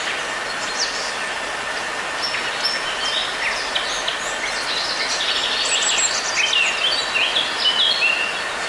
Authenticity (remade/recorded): recorded